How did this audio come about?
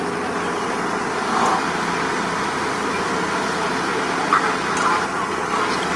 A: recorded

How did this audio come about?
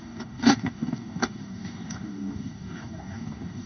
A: remade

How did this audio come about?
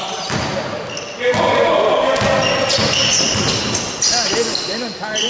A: recorded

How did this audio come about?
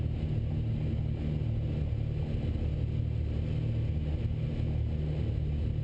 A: recorded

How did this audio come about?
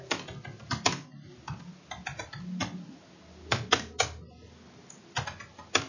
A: recorded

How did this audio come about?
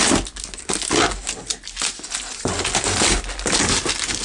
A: recorded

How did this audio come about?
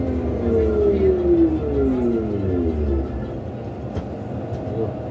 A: recorded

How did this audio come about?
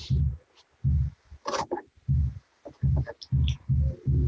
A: recorded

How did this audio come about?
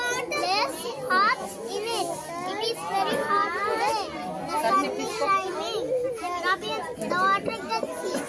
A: recorded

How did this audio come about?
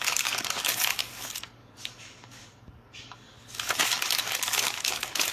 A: remade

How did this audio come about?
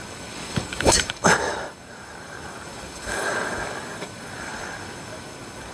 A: remade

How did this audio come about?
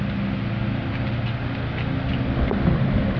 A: recorded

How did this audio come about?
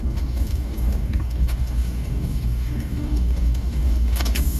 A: remade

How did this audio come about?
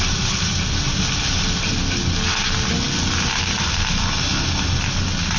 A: recorded